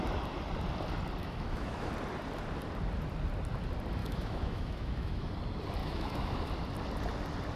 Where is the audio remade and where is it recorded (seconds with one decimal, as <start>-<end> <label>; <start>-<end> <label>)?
0.0-1.2 recorded; 1.2-1.9 remade; 1.9-4.0 recorded; 4.0-5.3 remade; 5.3-5.8 recorded; 5.8-6.5 remade; 6.5-7.6 recorded